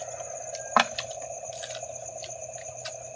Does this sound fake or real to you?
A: real